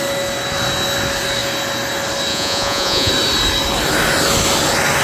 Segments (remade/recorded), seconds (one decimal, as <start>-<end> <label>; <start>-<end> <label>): 0.0-2.3 recorded; 2.3-3.1 remade; 3.1-5.0 recorded